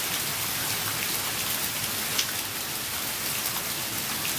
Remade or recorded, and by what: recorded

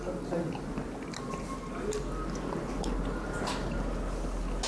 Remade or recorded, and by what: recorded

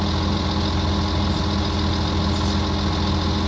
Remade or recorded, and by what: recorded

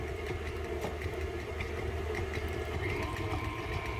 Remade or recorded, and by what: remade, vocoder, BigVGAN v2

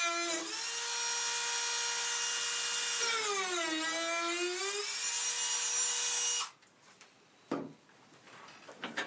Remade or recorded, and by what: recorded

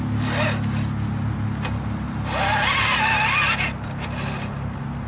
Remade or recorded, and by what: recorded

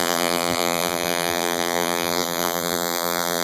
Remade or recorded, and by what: remade, vocoder, BigVGAN v2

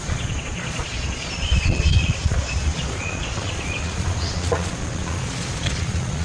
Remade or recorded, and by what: remade, vocoder, Vocos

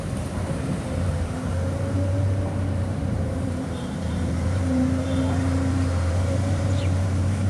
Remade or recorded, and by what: remade, vocoder, BigVGAN v2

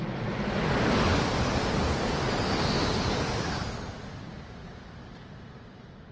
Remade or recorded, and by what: recorded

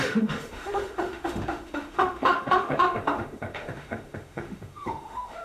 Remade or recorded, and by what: remade, autoencoder, DAC-VAE